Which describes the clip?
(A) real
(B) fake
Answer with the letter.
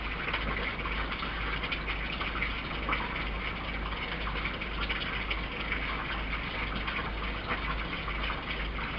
A